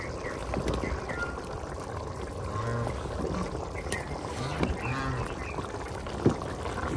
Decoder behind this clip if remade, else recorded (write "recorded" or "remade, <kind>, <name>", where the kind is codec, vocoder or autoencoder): recorded